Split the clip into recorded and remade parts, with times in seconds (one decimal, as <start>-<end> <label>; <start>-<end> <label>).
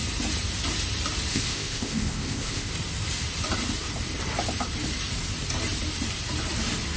0.0-1.3 recorded; 1.3-2.7 remade; 2.7-7.0 recorded